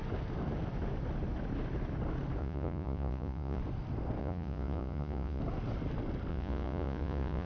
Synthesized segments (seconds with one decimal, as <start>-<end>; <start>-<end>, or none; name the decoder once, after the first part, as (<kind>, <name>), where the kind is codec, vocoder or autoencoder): 2.4-3.6 (vocoder, Vocos); 4.2-5.4; 6.3-7.5